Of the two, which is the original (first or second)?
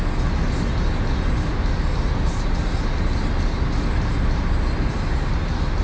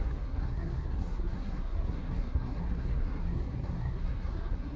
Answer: first